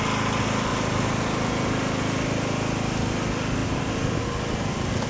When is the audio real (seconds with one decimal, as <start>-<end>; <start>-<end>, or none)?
0.0-5.1